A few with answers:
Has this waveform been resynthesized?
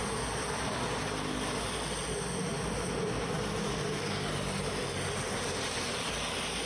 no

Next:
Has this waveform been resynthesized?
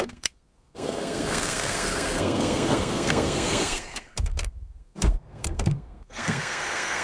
yes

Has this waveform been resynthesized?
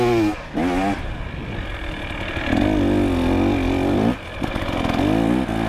no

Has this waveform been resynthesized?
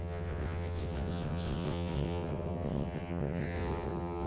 yes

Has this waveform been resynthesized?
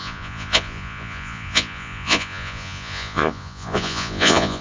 yes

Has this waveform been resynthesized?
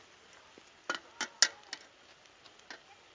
no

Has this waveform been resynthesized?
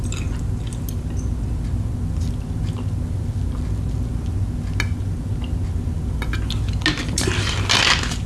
no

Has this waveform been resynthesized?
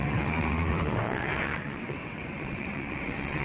yes